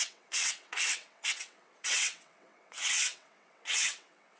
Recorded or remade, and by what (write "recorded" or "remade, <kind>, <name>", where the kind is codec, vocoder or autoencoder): remade, vocoder, WaveNeXt